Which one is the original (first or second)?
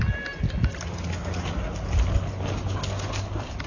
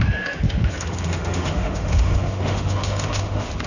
first